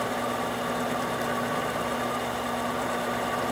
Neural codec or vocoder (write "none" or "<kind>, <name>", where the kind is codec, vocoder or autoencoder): none